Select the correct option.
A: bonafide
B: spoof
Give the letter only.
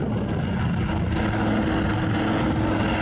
A